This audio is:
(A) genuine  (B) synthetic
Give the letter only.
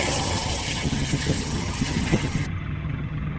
B